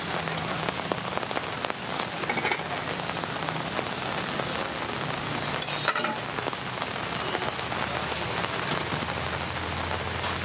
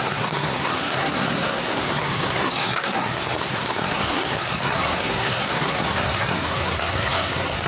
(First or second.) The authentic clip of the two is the first